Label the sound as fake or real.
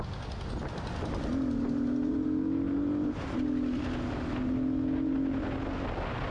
real